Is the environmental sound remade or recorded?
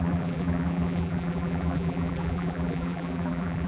remade